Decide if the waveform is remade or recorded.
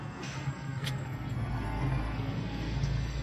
remade